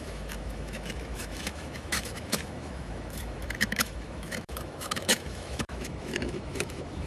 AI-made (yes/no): yes